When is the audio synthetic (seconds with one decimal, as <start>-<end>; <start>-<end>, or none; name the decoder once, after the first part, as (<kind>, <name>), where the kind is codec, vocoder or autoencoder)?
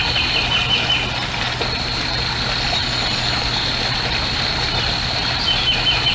none